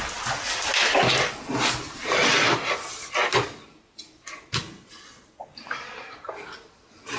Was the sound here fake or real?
real